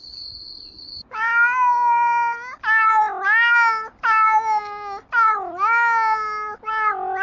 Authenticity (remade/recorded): recorded